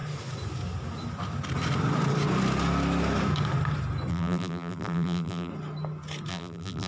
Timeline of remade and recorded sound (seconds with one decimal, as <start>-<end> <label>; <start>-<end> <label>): 0.0-4.1 recorded; 4.1-5.5 remade; 5.5-6.3 recorded; 6.3-6.9 remade